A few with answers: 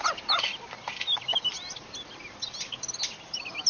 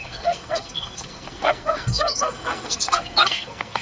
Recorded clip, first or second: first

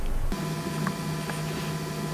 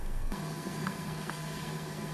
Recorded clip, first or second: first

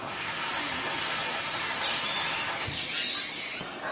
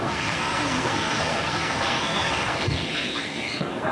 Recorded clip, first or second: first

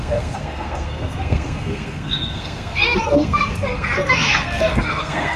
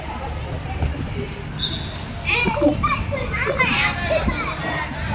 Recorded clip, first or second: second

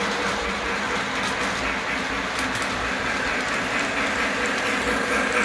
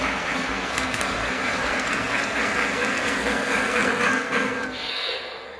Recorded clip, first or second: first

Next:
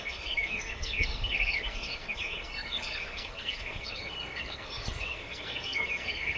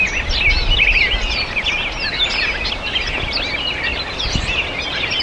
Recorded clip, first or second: second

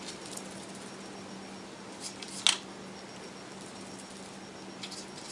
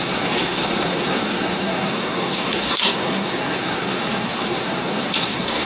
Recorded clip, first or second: first